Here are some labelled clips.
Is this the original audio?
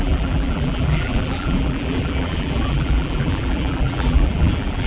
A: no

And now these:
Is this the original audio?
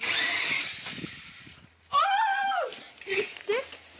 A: no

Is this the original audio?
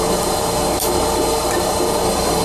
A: no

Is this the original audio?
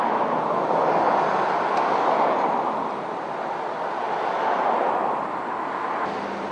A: yes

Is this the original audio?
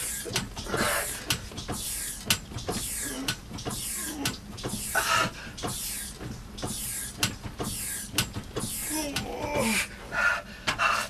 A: yes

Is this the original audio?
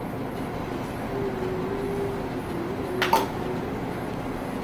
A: yes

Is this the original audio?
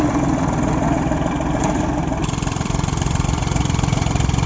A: no